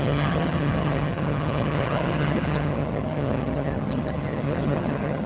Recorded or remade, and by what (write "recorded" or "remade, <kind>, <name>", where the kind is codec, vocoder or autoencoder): remade, vocoder, HiFi-GAN